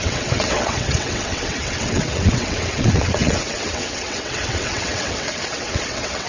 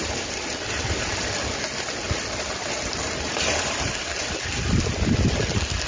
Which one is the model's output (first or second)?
first